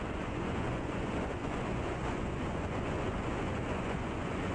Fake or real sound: fake